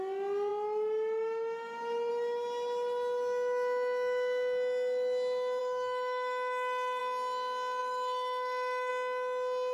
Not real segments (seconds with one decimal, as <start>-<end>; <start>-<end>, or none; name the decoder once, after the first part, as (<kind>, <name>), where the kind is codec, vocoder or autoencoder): 5.6-7.0 (autoencoder, DAC-VAE); 7.8-8.9